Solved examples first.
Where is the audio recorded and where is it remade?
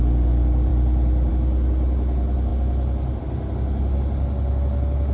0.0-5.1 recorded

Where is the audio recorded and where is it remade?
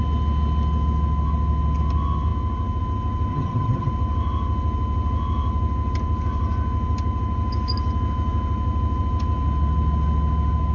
0.0-3.3 recorded; 3.3-3.9 remade; 3.9-10.7 recorded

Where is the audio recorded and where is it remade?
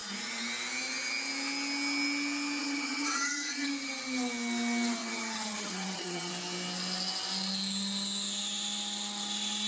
0.0-2.6 recorded; 2.6-3.7 remade; 3.7-5.0 recorded; 5.0-6.3 remade; 6.3-9.7 recorded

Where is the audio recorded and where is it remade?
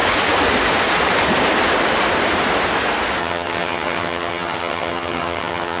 0.0-3.2 recorded; 3.2-5.8 remade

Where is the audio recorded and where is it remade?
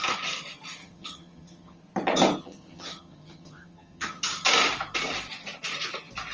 0.0-0.8 recorded; 0.8-1.8 remade; 1.8-2.4 recorded; 2.4-4.2 remade; 4.2-6.3 recorded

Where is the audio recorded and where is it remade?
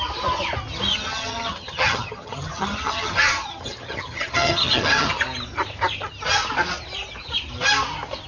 0.0-0.9 recorded; 0.9-5.2 remade; 5.2-8.3 recorded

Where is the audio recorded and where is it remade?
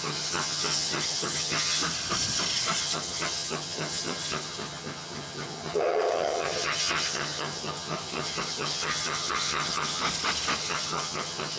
0.0-1.8 remade; 1.8-2.8 recorded; 2.8-10.0 remade; 10.0-10.6 recorded; 10.6-11.6 remade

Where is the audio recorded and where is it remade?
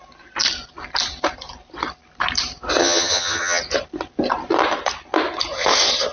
0.0-2.8 recorded; 2.8-3.6 remade; 3.6-6.1 recorded